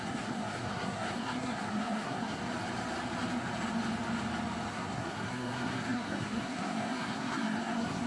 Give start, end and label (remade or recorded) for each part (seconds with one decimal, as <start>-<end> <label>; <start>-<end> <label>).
0.0-2.4 remade; 2.4-4.7 recorded; 4.7-8.1 remade